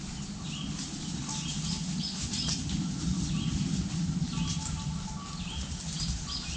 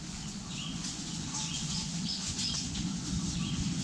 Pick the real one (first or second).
first